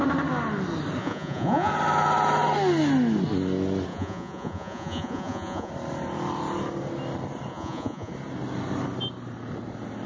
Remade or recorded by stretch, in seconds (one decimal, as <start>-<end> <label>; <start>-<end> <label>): 0.0-1.0 recorded; 1.0-1.7 remade; 1.7-3.9 recorded; 3.9-5.7 remade; 5.7-7.5 recorded; 7.5-8.1 remade; 8.1-10.1 recorded